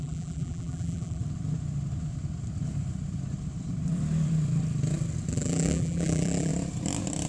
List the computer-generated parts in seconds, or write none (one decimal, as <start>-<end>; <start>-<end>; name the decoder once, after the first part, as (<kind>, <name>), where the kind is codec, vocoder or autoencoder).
0.0-1.2 (vocoder, BigVGAN v2); 5.3-6.5